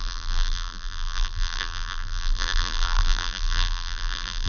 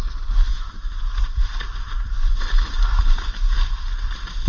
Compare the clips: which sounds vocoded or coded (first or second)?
first